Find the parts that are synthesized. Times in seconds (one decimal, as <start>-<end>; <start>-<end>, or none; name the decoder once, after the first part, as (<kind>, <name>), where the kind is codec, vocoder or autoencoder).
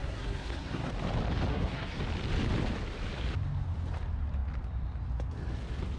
0.0-0.9 (codec, SNAC); 1.5-2.0